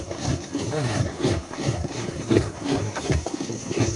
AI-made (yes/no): yes